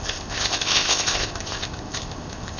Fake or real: fake